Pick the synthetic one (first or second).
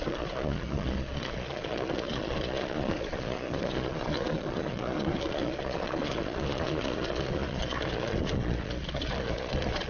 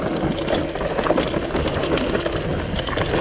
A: first